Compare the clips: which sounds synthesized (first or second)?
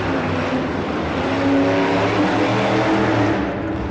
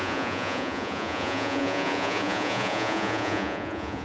second